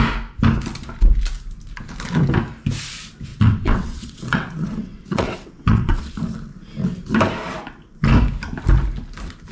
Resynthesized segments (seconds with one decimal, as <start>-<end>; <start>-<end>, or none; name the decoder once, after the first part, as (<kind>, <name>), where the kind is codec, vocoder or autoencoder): 3.3-6.1 (vocoder, WaveNeXt)

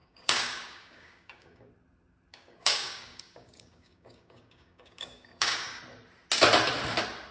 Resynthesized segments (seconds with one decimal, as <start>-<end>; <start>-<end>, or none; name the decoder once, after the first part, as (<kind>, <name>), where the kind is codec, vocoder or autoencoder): 0.0-1.7 (codec, DAC); 2.3-5.8

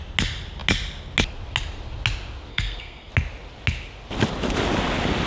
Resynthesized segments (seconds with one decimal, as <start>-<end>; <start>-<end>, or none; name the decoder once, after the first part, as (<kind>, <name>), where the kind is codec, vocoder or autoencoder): 2.5-3.1 (codec, SNAC)